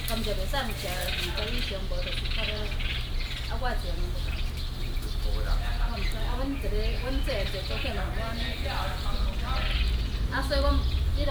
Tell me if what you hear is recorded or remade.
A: recorded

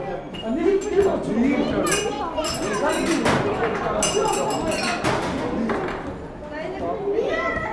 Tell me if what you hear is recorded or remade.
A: recorded